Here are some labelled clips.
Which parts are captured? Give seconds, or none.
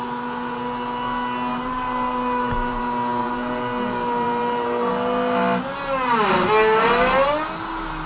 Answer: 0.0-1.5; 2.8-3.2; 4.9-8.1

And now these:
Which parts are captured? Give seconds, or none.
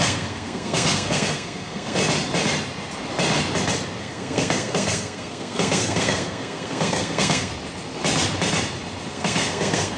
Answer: 2.0-4.0; 7.5-9.1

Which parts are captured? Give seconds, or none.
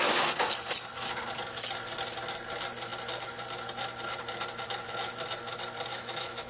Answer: 0.0-5.9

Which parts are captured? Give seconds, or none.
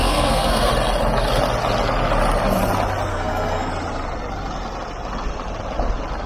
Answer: 0.7-3.1; 3.7-6.3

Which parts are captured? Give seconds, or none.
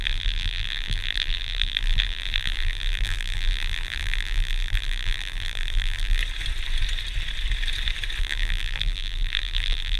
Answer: 6.2-8.2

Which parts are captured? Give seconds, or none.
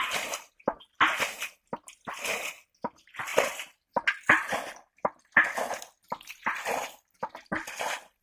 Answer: 0.0-8.2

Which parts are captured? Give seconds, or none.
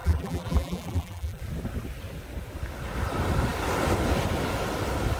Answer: 1.4-5.2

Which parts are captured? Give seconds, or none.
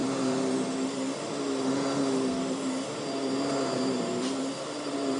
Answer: 0.0-5.2